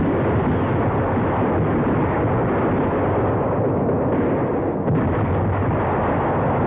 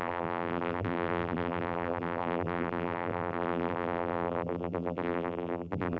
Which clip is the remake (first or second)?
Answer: second